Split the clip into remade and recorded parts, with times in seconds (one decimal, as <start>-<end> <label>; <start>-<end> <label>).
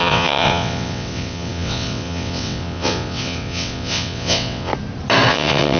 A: 0.0-4.7 remade; 4.7-5.3 recorded; 5.3-5.8 remade